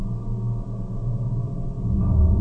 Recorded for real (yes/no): yes